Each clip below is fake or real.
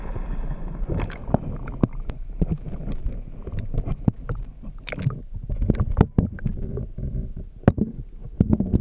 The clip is real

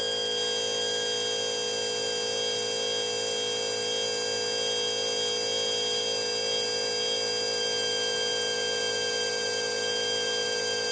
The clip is real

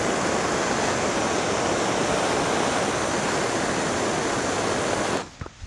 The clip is real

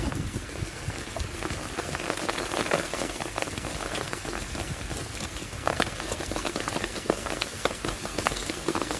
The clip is fake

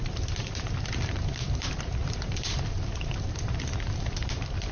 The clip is fake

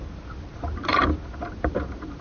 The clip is real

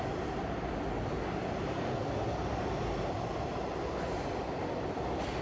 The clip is real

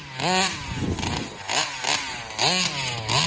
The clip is real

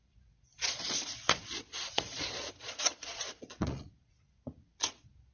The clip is fake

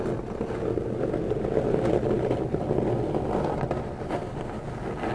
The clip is real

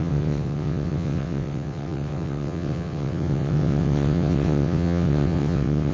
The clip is fake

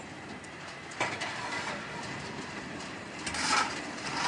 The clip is fake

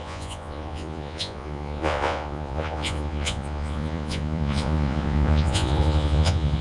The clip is fake